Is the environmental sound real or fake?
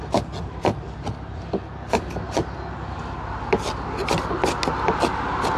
real